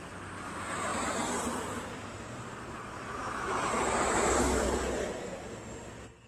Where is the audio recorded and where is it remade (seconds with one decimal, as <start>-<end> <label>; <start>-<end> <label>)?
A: 0.0-0.9 recorded; 0.9-4.4 remade; 4.4-6.3 recorded